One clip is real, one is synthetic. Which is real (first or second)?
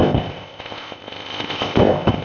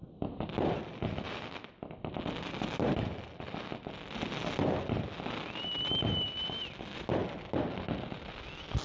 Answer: second